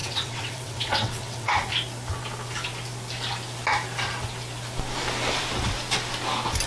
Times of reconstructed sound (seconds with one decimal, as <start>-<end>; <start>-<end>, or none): 0.0-1.5